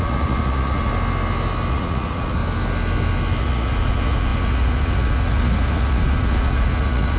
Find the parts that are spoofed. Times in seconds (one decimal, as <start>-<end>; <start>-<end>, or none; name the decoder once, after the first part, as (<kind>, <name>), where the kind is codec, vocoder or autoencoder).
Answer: 0.0-0.9 (vocoder, Vocos); 1.7-2.4; 3.4-7.2